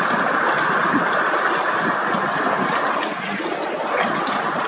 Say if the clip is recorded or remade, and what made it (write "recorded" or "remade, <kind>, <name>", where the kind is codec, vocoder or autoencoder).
recorded